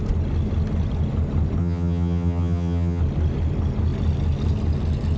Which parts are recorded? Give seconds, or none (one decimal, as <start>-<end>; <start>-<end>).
0.0-1.6; 3.0-5.2

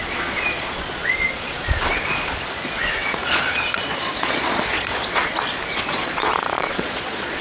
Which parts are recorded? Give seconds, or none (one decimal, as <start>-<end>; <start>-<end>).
5.2-5.7

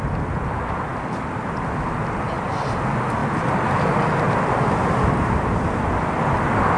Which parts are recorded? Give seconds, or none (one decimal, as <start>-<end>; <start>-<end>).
0.0-6.8

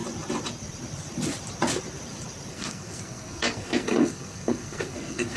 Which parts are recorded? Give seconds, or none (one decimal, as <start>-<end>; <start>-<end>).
0.0-2.5

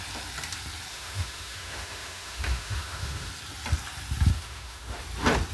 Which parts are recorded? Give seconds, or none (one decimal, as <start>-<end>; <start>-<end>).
0.0-0.9; 3.3-4.3; 5.0-5.5